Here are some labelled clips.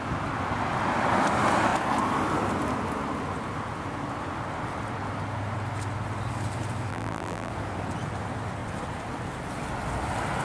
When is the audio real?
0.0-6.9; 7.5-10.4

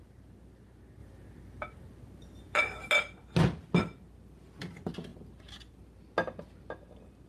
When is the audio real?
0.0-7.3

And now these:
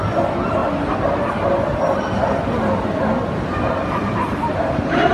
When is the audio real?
0.0-5.1